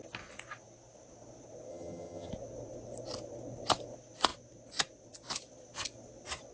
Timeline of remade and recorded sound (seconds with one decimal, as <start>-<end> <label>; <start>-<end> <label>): 0.0-1.7 recorded; 1.7-2.3 remade; 2.3-6.5 recorded